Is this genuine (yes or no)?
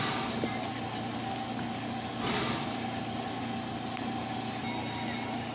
yes